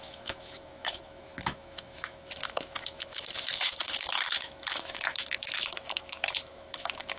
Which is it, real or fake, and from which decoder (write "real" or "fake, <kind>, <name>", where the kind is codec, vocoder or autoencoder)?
fake, autoencoder, DAC-VAE